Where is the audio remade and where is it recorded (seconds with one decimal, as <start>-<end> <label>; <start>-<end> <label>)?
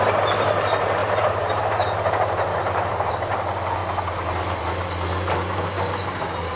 0.0-1.0 recorded; 1.0-1.6 remade; 1.6-2.5 recorded; 2.5-3.1 remade; 3.1-6.6 recorded